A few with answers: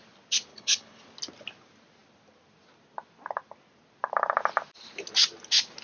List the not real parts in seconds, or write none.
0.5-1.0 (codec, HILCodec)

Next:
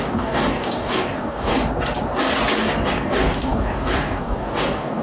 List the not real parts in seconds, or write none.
0.0-1.5 (codec, DAC); 2.9-5.0

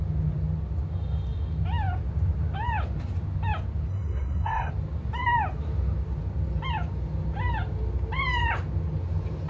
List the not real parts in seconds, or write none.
3.9-4.7 (codec, SNAC)

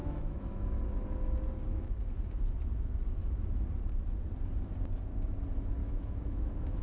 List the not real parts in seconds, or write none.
0.0-0.8 (autoencoder, DAC-VAE); 5.8-6.8

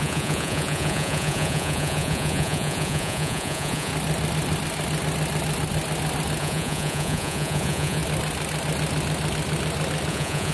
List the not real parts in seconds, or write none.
0.0-3.9 (vocoder, Vocos); 6.4-8.0; 10.1-10.5

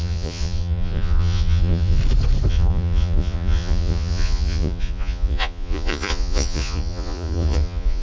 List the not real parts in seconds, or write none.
0.0-2.0 (vocoder, Vocos); 2.5-8.0

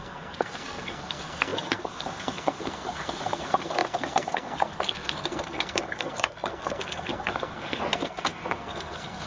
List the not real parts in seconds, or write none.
0.0-9.3 (codec, SNAC)